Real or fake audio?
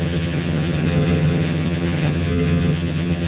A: fake